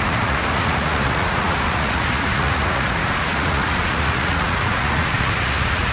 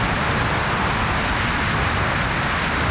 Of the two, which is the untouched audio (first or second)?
second